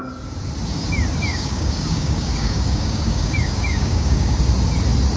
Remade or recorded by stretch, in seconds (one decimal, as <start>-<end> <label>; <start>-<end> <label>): 0.0-1.3 recorded; 1.3-4.4 remade; 4.4-5.2 recorded